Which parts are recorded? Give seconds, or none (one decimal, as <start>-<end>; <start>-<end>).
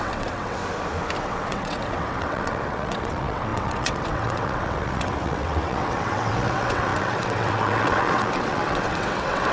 0.6-1.2